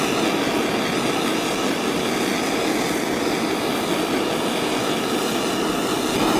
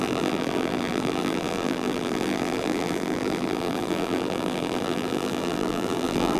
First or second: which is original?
first